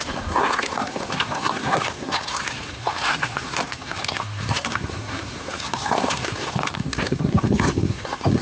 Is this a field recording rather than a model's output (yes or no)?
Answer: no